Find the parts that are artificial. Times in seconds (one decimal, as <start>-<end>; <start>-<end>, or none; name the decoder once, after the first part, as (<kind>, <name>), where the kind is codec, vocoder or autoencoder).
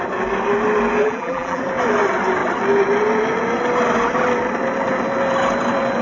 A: 1.0-1.6 (vocoder, BigVGAN v2)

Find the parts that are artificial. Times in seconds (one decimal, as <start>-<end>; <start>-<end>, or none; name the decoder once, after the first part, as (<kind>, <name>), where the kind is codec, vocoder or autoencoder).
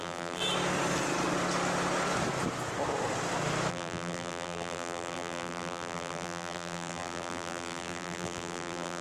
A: 0.0-0.4 (vocoder, BigVGAN v2); 3.7-9.0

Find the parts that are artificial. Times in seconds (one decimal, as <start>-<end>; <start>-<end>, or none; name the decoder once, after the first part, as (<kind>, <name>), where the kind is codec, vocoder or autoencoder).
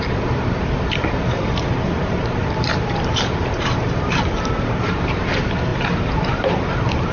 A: 0.0-7.1 (vocoder, BigVGAN v2)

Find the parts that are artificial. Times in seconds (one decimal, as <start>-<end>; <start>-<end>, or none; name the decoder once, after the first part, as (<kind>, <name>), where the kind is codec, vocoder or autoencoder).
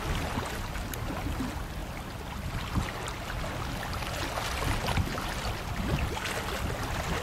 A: none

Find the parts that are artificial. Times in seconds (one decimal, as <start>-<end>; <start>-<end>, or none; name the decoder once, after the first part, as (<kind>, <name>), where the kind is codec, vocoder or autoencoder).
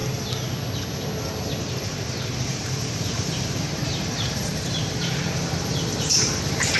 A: 1.6-6.8 (vocoder, BigVGAN v2)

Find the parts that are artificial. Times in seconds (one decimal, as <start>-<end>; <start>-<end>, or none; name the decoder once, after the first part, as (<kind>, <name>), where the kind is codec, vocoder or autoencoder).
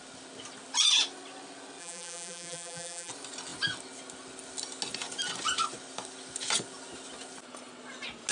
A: 1.8-3.1 (vocoder, BigVGAN v2)